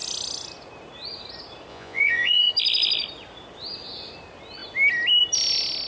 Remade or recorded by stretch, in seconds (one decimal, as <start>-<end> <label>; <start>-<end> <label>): 0.0-1.7 recorded; 1.7-2.5 remade; 2.5-5.9 recorded